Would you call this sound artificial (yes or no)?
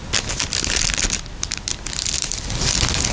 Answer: no